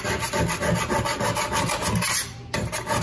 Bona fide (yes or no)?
yes